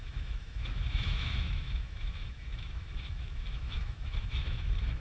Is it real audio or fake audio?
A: fake